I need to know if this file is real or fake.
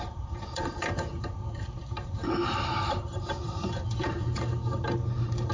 fake